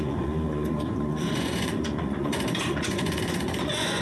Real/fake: fake